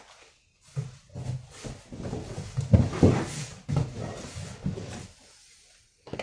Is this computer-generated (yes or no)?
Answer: no